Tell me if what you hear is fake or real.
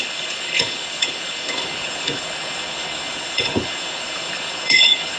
fake